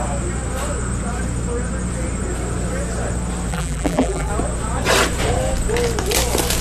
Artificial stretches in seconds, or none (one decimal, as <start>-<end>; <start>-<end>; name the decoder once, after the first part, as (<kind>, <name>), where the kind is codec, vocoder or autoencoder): 3.5-4.3 (vocoder, BigVGAN v2)